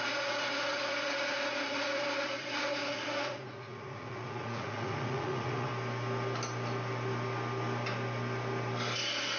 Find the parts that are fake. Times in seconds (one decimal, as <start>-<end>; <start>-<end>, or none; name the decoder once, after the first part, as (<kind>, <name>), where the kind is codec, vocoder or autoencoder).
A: 0.0-5.7 (vocoder, Vocos)